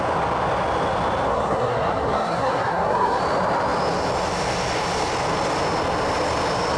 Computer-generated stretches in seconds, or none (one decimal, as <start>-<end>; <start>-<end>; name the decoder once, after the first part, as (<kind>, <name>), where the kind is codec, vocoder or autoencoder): 1.3-3.2 (codec, SNAC)